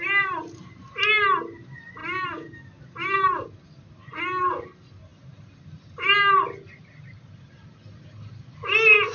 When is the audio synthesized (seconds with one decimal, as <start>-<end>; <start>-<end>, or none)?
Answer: none